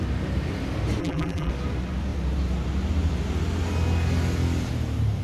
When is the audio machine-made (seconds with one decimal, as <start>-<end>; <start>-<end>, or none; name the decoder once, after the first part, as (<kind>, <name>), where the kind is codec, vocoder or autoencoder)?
1.0-1.5 (vocoder, BigVGAN v2)

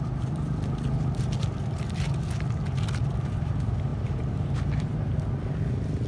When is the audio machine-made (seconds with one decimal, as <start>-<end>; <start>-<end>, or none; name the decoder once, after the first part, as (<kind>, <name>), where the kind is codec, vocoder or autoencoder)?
3.0-3.5 (vocoder, BigVGAN v2); 3.9-5.2

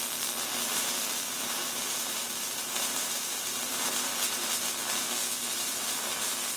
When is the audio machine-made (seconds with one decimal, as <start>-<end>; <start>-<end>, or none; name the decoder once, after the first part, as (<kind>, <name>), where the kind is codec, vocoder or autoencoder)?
0.7-4.7 (vocoder, BigVGAN v2); 5.5-6.1